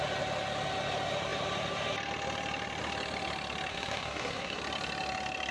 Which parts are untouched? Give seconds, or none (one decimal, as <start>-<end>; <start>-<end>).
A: 0.0-3.7; 4.6-5.5